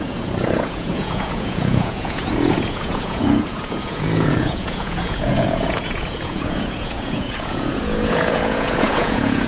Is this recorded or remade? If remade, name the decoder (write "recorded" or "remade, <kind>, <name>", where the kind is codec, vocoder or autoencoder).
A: remade, vocoder, Vocos